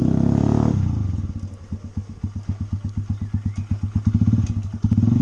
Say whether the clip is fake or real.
real